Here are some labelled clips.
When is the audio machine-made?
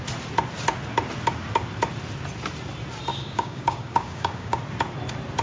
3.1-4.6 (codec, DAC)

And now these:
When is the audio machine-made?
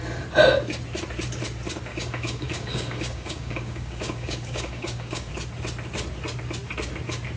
1.9-5.3 (codec, DAC)